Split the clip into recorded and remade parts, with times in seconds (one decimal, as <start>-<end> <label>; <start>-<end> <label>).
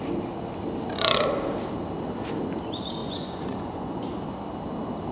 0.0-3.0 recorded; 3.0-4.0 remade; 4.0-5.1 recorded